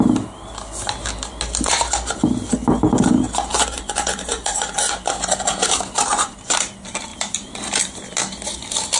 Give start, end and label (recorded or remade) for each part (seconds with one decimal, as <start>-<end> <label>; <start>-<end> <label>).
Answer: 0.0-3.5 recorded; 3.5-4.9 remade; 4.9-9.0 recorded